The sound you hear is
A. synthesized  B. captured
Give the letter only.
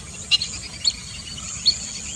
B